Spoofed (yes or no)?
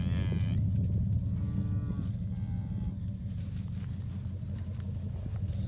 no